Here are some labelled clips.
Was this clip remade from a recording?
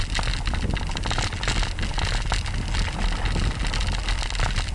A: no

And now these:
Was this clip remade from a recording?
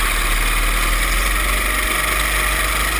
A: no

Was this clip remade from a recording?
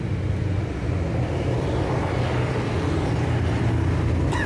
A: no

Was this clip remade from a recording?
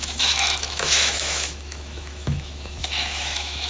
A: yes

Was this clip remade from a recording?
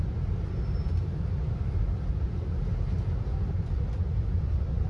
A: no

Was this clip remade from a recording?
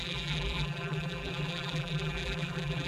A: yes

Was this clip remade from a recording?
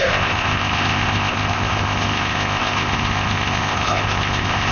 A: yes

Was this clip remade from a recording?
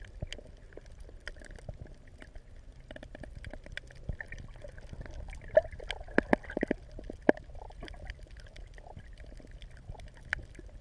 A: no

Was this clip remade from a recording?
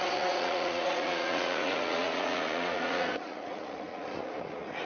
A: yes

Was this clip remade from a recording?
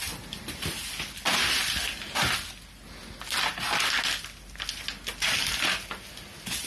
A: no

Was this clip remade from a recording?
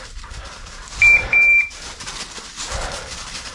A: yes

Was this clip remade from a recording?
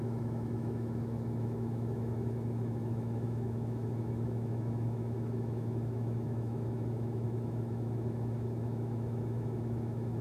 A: yes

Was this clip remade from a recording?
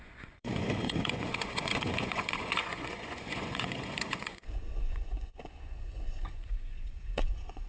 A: yes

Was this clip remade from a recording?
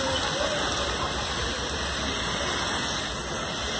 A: no